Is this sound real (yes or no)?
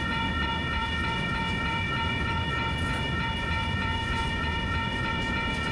no